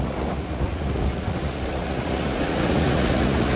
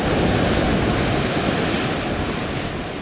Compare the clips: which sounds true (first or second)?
second